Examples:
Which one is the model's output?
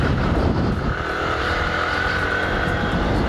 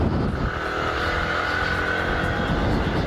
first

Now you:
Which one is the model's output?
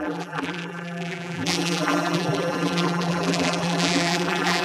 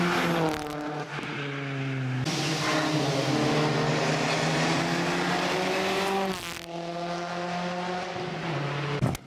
first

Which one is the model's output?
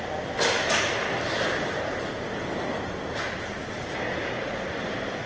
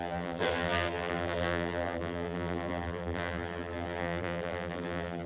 second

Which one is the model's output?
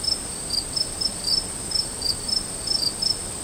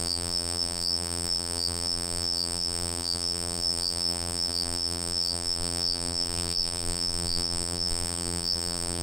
second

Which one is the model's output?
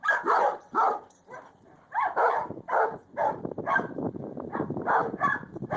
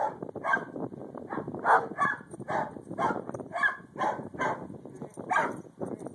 first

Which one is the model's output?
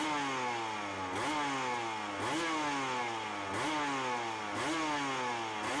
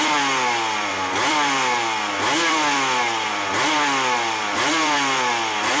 second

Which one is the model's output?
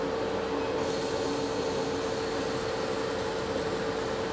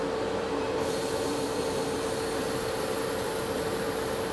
second